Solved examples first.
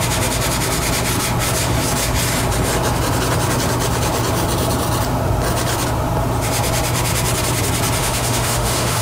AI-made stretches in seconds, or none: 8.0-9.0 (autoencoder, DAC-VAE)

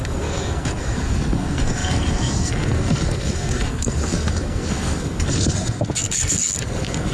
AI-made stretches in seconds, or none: 0.0-7.1 (codec, SNAC)